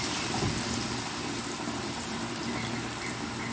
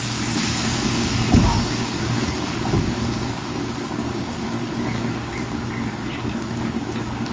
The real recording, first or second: first